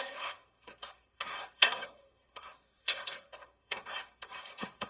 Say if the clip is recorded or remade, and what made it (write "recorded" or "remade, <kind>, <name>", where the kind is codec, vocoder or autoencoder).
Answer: remade, codec, SNAC